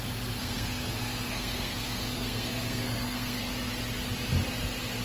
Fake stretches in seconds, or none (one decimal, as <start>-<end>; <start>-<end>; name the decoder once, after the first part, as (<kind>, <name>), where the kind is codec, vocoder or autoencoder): 0.4-3.4 (codec, SNAC)